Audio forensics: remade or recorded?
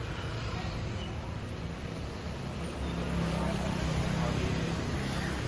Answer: recorded